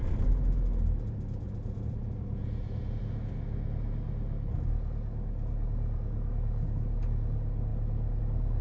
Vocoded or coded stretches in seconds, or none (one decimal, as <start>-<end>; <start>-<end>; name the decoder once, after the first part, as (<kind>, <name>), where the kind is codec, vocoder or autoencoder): none